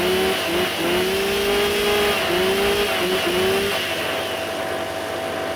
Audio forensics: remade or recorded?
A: recorded